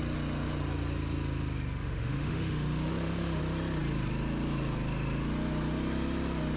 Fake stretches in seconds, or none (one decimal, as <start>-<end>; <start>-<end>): 1.8-3.4